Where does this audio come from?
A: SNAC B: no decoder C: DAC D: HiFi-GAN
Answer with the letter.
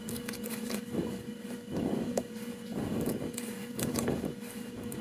C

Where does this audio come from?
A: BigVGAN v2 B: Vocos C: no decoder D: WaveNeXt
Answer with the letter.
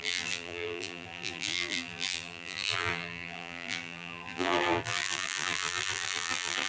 A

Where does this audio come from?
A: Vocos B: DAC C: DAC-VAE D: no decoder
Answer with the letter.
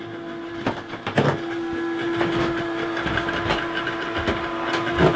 D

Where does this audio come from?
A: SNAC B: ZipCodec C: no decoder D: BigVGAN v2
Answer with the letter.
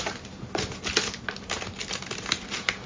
C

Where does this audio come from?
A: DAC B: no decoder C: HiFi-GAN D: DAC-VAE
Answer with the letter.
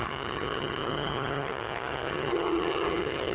C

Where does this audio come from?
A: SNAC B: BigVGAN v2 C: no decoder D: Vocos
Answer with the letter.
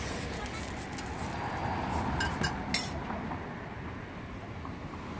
C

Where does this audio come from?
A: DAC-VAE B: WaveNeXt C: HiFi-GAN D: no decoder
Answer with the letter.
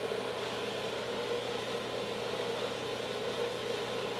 D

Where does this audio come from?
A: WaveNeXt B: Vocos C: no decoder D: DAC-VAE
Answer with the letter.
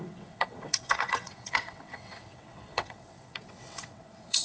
A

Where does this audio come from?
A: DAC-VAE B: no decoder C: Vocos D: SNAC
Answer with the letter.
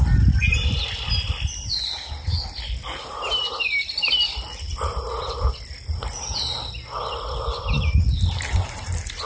B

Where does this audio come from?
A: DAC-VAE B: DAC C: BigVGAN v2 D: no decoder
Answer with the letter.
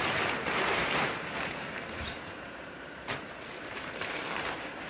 C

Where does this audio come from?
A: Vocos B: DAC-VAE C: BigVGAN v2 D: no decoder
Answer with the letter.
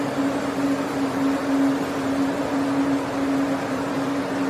D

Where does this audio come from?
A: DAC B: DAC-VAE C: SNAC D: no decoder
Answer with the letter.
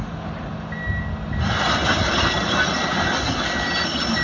D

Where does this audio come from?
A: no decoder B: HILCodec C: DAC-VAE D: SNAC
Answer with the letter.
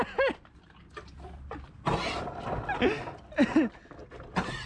A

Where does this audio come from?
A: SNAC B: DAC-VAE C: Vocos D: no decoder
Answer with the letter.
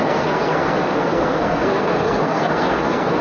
A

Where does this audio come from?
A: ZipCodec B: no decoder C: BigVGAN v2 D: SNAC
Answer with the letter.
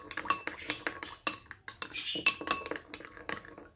B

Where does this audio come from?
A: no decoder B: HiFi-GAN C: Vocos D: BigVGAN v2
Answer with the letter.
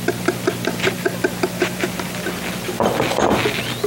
A